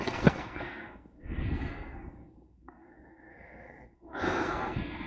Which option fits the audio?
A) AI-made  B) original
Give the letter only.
A